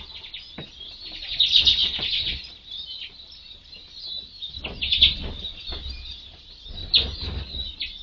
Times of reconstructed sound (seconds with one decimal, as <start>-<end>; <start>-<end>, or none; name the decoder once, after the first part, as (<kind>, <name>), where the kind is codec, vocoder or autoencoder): none